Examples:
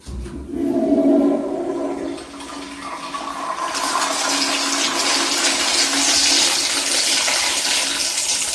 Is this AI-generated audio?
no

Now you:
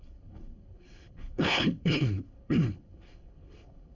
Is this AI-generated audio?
yes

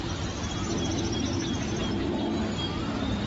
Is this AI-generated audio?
no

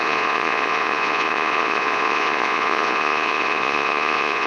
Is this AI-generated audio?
yes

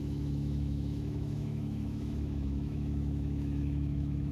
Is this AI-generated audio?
yes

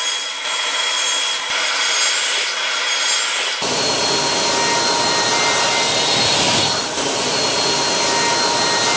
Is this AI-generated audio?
no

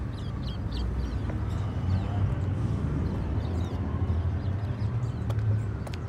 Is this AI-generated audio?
no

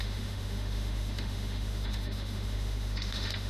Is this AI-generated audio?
yes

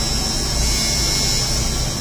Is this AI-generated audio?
no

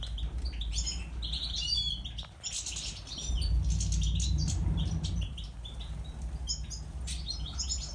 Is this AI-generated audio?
no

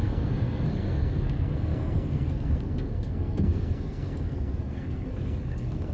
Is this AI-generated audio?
yes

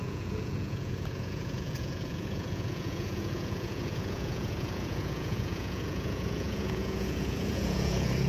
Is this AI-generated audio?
yes